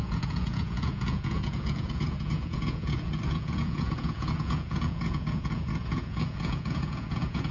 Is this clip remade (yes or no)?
yes